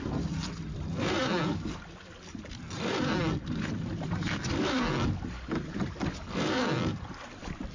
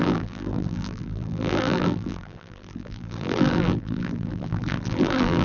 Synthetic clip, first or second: second